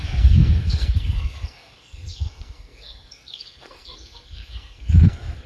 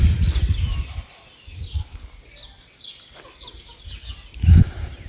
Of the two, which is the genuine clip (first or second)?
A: second